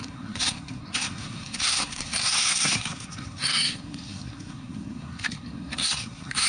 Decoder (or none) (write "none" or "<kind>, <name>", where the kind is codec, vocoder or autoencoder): codec, SNAC